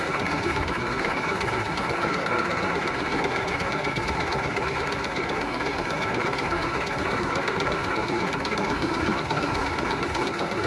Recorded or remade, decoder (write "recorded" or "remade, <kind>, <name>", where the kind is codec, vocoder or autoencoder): remade, codec, SNAC